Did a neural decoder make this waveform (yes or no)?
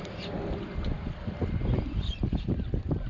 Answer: yes